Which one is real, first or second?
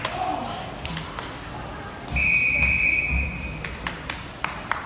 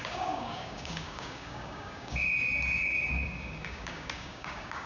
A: first